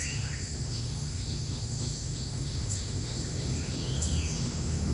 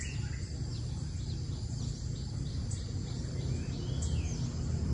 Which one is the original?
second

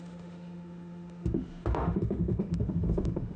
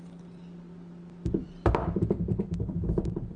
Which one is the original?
second